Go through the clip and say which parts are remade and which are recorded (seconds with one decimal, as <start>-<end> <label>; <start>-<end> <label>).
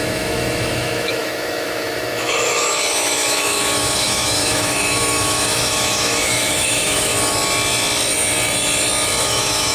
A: 0.0-7.1 remade; 7.1-9.2 recorded; 9.2-9.7 remade